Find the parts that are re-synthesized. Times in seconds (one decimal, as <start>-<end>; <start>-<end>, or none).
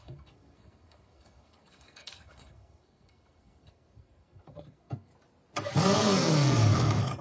0.0-5.1; 5.7-7.2